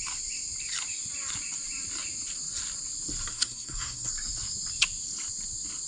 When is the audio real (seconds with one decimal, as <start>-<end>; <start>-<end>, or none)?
0.0-3.3; 4.1-5.9